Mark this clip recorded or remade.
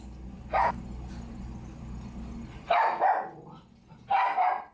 recorded